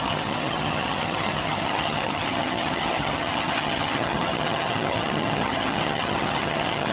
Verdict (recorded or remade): remade